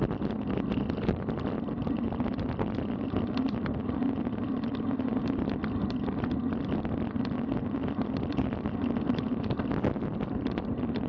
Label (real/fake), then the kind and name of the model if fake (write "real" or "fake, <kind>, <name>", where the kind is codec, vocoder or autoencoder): real